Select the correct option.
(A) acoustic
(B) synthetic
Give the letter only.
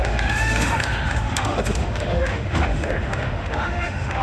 B